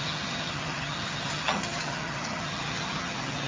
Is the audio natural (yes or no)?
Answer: no